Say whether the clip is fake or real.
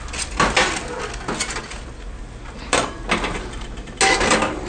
real